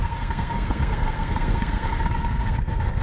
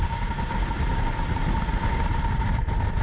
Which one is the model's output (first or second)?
first